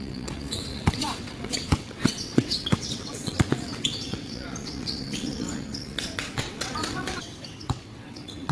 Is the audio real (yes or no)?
no